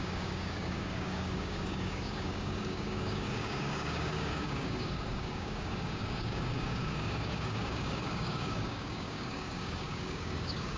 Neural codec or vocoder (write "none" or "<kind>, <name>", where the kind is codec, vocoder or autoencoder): codec, DAC